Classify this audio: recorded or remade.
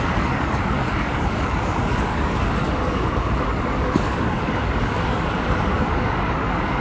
remade